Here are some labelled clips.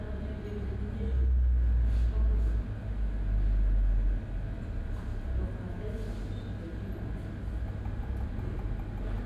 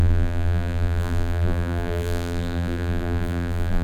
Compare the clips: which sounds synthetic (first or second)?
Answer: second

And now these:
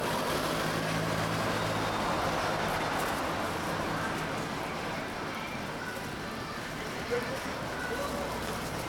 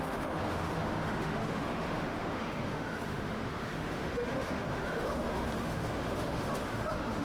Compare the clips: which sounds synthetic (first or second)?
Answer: second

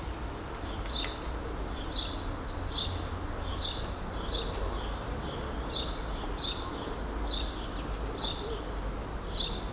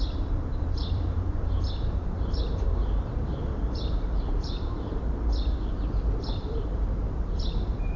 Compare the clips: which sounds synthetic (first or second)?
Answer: second